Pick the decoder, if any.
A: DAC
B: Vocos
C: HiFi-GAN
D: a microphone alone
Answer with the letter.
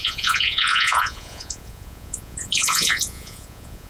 B